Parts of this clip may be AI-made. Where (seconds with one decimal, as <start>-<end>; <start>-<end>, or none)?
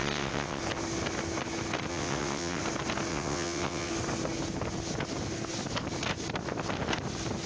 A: 0.0-0.6; 1.9-2.6; 3.1-3.9